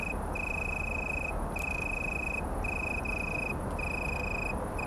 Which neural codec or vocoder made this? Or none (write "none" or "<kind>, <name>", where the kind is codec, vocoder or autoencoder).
none